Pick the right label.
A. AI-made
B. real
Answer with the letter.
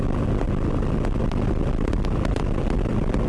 B